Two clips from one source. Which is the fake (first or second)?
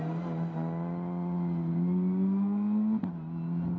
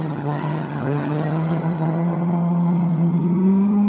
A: second